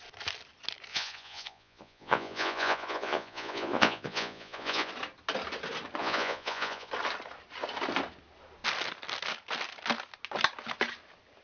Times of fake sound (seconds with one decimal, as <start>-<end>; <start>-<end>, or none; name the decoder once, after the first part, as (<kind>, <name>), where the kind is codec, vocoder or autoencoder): 0.9-4.9 (vocoder, Vocos); 6.0-6.9